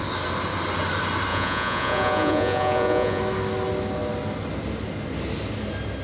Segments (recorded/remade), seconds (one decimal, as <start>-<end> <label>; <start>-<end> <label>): 0.0-1.3 recorded; 1.3-3.2 remade; 3.2-6.0 recorded